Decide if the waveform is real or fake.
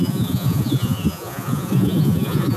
fake